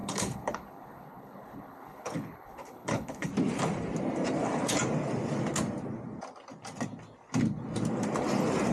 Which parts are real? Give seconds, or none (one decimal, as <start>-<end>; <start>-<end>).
3.3-8.7